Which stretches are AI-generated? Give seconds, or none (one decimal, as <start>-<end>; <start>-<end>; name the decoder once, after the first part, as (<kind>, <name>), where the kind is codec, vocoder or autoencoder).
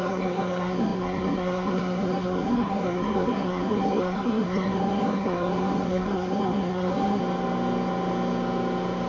0.0-7.2 (codec, SNAC)